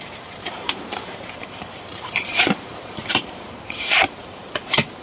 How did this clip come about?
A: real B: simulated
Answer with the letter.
B